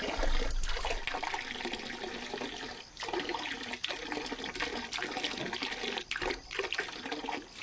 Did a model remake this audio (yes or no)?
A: no